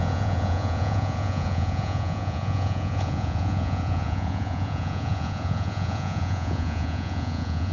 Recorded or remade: remade